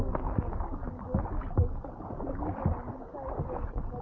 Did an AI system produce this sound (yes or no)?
no